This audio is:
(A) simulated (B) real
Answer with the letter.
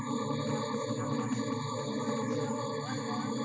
B